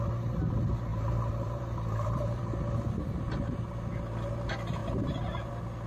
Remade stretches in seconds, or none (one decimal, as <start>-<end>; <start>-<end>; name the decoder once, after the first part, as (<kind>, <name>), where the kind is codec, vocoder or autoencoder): 0.9-2.4 (vocoder, BigVGAN v2)